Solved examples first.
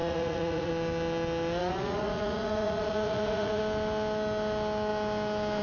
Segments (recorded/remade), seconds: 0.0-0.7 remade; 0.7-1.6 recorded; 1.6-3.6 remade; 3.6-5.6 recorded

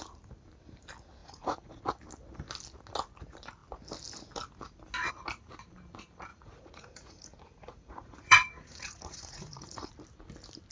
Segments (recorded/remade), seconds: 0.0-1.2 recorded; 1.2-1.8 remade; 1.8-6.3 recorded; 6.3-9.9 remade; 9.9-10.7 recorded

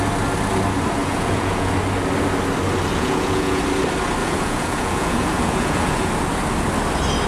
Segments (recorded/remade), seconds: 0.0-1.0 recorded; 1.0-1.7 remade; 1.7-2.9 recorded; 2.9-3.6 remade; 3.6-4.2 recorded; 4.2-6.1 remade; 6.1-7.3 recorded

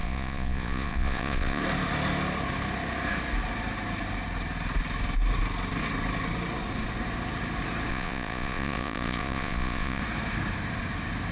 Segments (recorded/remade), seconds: 0.0-1.6 remade; 1.6-7.9 recorded; 7.9-10.0 remade; 10.0-11.3 recorded

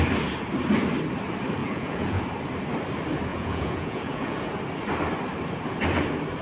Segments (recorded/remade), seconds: 0.0-1.6 recorded; 1.6-2.2 remade; 2.2-3.3 recorded; 3.3-4.5 remade; 4.5-6.4 recorded

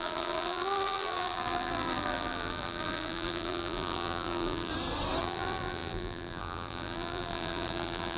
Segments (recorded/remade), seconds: 0.0-4.7 remade; 4.7-5.2 recorded; 5.2-8.2 remade

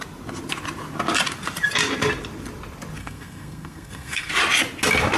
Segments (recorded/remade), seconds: 0.0-3.0 recorded; 3.0-4.3 remade; 4.3-5.2 recorded